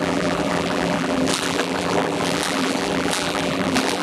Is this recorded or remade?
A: remade